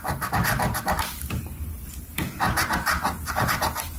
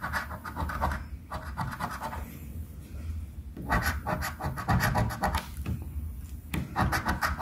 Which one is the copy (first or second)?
first